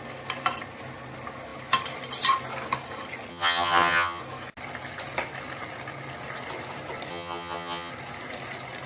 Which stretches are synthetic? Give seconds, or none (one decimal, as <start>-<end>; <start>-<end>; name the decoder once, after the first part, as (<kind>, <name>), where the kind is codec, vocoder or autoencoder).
3.3-4.2 (vocoder, HiFi-GAN); 7.1-7.9